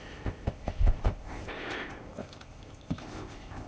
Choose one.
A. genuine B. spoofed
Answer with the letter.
B